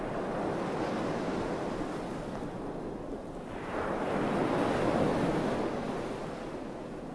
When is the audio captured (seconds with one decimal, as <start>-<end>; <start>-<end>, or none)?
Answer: 0.0-7.1